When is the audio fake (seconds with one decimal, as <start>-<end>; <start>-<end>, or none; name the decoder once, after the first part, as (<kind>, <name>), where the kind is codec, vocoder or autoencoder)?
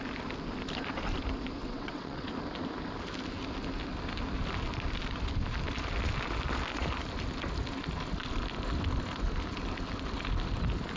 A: 1.6-2.3 (vocoder, WaveNeXt)